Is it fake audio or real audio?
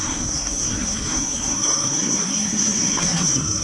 fake